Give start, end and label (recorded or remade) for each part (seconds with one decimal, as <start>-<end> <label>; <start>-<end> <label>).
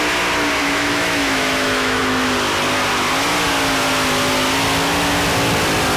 0.0-0.6 recorded; 0.6-2.0 remade; 2.0-6.0 recorded